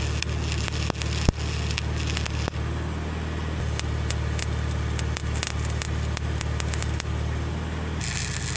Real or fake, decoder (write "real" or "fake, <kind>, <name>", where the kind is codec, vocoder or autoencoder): real